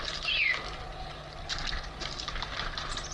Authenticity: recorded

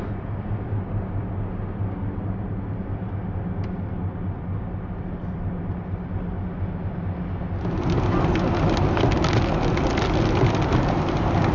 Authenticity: recorded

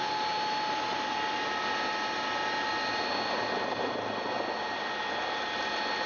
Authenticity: recorded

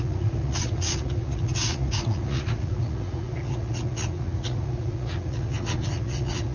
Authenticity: remade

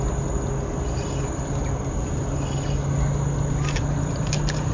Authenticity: recorded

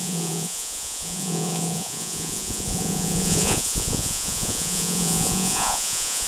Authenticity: remade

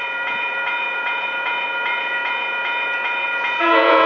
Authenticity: remade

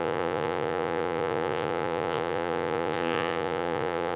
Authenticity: remade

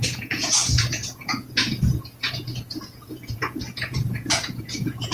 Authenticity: remade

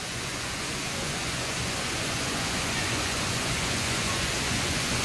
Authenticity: remade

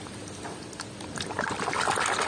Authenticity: recorded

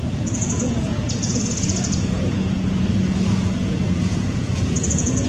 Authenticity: remade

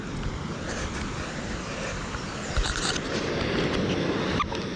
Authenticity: recorded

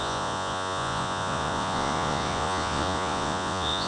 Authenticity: remade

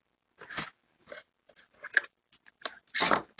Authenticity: recorded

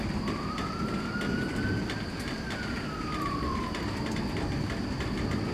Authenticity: recorded